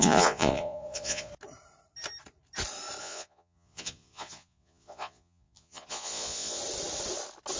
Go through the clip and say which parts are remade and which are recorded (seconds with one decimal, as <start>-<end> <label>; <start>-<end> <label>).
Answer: 0.0-1.3 remade; 1.3-3.0 recorded; 3.0-6.6 remade; 6.6-7.6 recorded